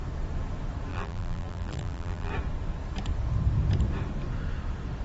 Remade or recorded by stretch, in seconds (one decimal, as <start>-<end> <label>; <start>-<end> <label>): 0.0-0.9 recorded; 0.9-2.3 remade; 2.3-5.0 recorded